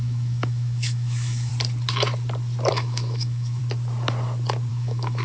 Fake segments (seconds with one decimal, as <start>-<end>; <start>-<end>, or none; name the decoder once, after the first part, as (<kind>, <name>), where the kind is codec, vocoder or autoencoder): 0.0-1.5 (autoencoder, DAC-VAE); 2.7-3.6; 4.7-5.2